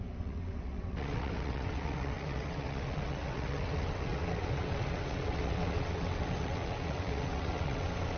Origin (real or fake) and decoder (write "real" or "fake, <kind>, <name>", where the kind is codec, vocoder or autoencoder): fake, vocoder, WaveNeXt